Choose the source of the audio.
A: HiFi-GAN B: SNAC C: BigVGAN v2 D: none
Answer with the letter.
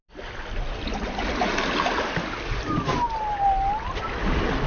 D